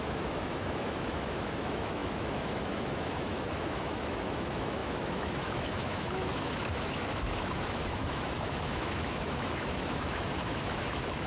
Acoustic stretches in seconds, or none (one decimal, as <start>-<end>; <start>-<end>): none